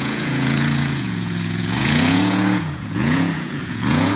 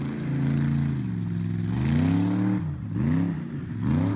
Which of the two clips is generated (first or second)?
first